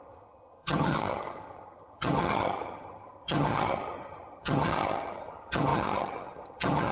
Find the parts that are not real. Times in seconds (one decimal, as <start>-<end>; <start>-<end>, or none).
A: 0.0-6.9